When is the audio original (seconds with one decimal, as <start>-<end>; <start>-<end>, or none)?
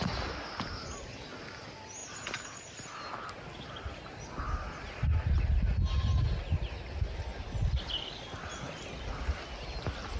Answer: 0.0-10.2